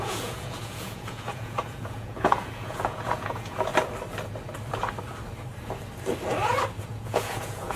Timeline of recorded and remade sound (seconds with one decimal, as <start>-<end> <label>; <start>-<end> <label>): 0.0-3.7 remade; 3.7-6.8 recorded; 6.8-7.8 remade